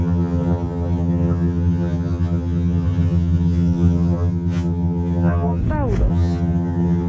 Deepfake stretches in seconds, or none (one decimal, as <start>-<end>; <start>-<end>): 0.0-5.6; 6.1-7.1